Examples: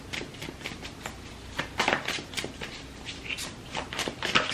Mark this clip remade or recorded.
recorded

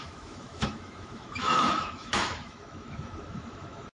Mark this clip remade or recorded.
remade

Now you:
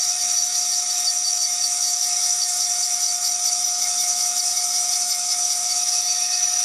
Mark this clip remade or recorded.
remade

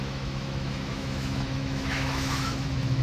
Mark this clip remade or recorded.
remade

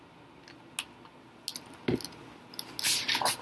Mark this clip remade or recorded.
recorded